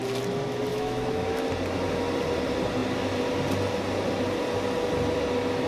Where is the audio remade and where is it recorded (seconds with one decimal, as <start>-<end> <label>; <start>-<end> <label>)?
0.0-0.7 recorded; 0.7-1.3 remade; 1.3-5.7 recorded